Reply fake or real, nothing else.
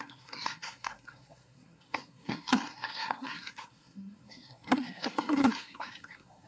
fake